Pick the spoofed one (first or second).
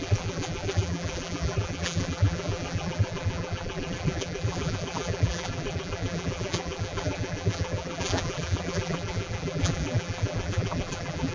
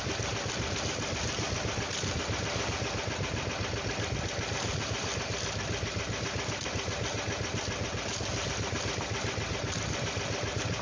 first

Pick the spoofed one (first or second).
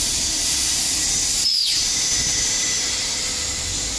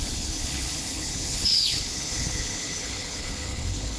second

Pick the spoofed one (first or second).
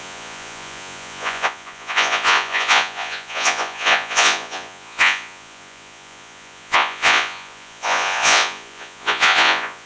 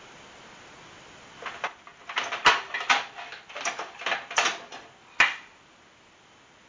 first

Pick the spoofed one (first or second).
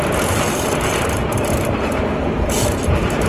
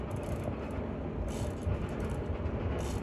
first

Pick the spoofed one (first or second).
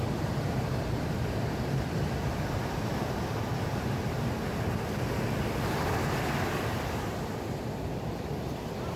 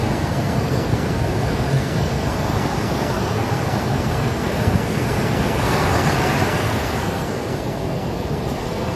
second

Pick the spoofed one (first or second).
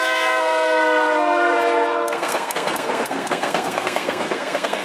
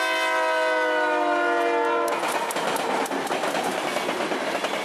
first